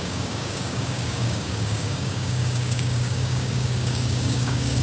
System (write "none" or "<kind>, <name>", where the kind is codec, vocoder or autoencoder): codec, DAC